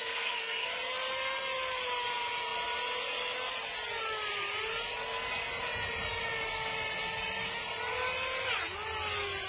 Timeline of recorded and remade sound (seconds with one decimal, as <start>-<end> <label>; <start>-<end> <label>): 0.0-0.7 remade; 0.7-9.5 recorded